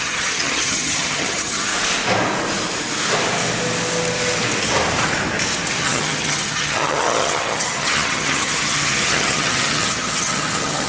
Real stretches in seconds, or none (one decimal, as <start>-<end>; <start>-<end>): 1.7-5.8